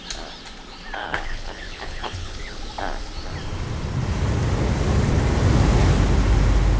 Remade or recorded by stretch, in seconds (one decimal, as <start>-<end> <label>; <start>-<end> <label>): 0.0-1.0 recorded; 1.0-2.6 remade; 2.6-6.8 recorded